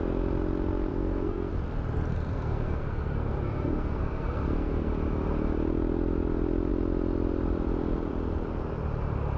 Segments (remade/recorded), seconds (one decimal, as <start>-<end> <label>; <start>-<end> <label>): 0.0-0.9 recorded; 0.9-1.5 remade; 1.5-2.1 recorded; 2.1-4.9 remade; 4.9-9.4 recorded